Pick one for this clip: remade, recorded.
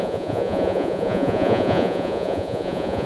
remade